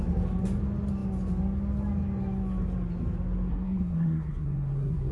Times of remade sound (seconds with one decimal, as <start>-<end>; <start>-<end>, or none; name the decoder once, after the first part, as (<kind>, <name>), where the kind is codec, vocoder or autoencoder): 3.5-5.1 (codec, SNAC)